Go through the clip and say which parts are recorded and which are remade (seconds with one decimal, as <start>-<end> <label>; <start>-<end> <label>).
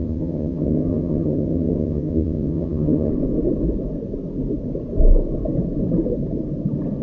0.0-3.1 remade; 3.1-7.0 recorded